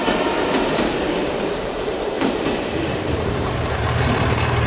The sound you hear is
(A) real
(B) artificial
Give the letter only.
B